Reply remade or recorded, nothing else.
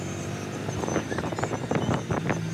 recorded